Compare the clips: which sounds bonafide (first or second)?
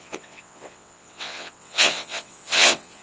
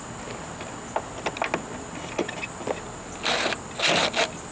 second